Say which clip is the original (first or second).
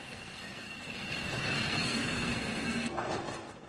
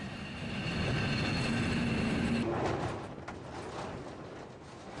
second